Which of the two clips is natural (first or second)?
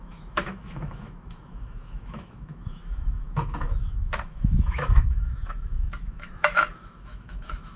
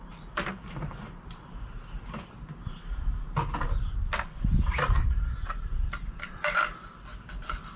second